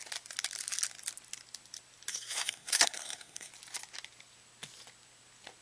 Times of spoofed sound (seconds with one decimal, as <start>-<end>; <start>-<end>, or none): 2.1-3.5